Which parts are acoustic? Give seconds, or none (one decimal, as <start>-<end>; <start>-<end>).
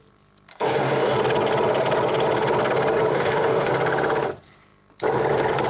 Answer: 0.0-0.5; 1.2-3.1; 3.7-5.7